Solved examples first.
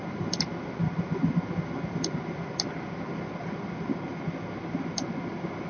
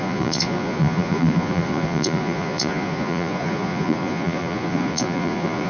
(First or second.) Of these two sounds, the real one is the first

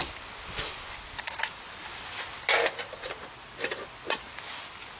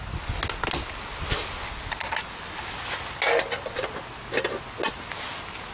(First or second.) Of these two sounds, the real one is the second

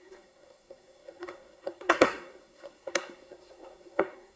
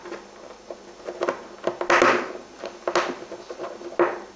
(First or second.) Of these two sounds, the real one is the second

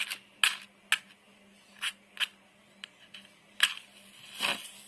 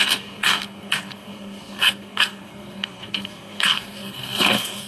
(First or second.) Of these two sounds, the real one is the first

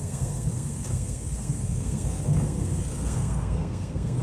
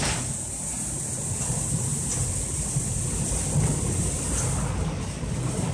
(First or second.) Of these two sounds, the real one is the second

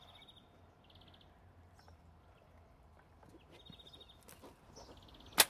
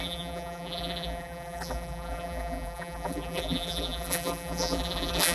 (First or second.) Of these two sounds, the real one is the first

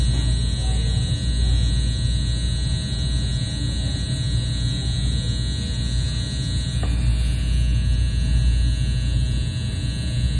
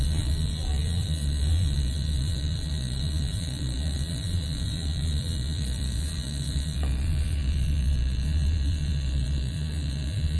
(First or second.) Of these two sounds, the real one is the first